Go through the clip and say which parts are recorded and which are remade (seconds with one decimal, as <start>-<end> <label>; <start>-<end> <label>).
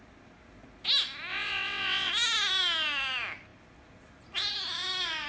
0.0-1.3 recorded; 1.3-2.1 remade; 2.1-5.3 recorded